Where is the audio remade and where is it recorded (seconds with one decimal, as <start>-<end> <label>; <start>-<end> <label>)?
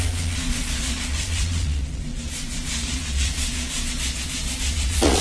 0.0-5.2 remade